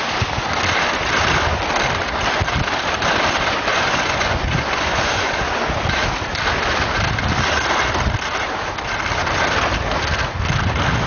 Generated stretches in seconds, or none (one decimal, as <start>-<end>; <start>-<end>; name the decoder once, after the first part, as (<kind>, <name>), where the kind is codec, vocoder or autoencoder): 3.7-5.3 (vocoder, Vocos)